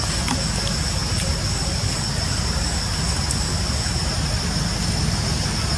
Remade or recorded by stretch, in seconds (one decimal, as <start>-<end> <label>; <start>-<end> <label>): 0.0-5.8 recorded